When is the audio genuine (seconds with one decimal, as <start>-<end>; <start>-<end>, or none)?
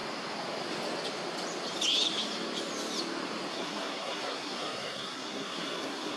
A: 0.0-3.5